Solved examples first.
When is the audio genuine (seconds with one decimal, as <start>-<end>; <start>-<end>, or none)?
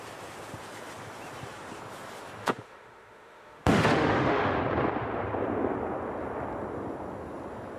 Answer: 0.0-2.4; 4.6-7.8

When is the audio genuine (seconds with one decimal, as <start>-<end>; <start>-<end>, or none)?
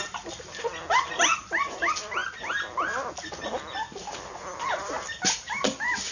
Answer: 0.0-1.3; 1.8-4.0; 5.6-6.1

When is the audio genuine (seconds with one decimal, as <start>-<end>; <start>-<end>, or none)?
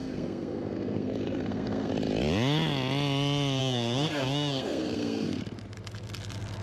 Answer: 1.9-3.6; 5.4-6.6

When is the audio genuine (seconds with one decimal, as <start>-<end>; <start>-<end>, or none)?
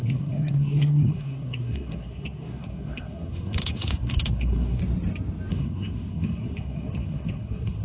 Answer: 4.8-5.5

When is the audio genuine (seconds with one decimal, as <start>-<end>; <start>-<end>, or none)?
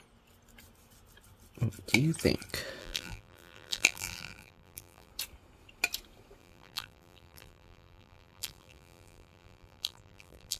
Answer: 0.0-2.8; 5.1-6.4